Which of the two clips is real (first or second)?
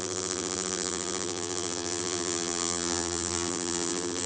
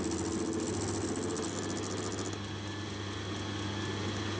second